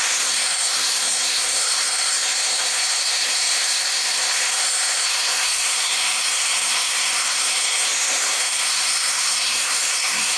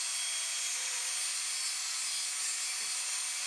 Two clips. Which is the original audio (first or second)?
second